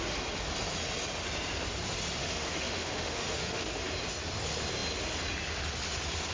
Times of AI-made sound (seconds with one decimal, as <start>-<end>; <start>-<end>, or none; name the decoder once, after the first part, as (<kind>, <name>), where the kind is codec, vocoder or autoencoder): 2.2-3.8 (autoencoder, DAC-VAE)